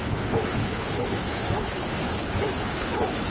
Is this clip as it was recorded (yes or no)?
no